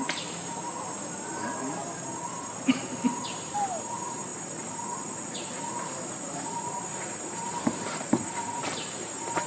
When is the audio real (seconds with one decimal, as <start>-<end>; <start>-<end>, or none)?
4.3-5.6